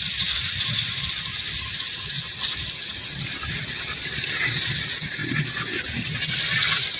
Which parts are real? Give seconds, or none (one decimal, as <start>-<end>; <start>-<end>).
0.0-7.0